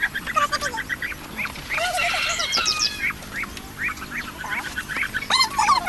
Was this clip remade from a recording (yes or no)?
no